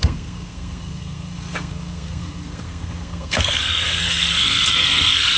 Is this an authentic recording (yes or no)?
no